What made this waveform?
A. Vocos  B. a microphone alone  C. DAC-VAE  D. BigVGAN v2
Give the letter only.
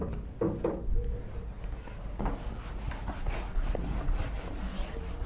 B